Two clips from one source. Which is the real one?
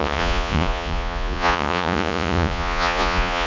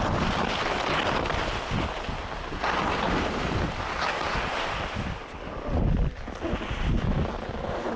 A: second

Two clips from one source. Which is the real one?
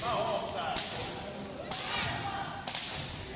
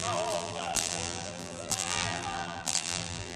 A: first